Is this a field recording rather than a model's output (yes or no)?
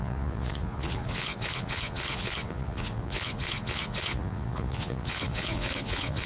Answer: no